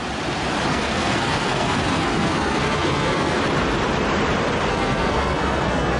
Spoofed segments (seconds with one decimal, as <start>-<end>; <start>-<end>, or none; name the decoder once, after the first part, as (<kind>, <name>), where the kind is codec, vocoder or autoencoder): 0.7-3.4 (codec, SNAC); 4.7-6.0